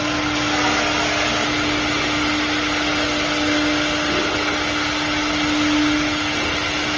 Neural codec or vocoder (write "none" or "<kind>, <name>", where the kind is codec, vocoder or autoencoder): none